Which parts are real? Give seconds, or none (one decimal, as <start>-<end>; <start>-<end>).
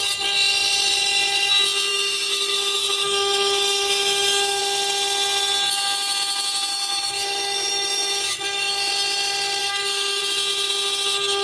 0.0-1.9; 4.6-6.7; 8.9-9.6; 10.2-11.4